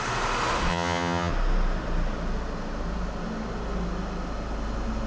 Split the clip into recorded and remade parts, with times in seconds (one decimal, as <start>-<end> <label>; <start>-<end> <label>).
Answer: 0.0-0.7 recorded; 0.7-1.3 remade; 1.3-5.1 recorded